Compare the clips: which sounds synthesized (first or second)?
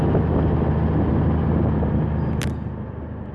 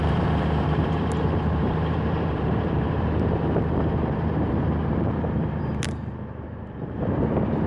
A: second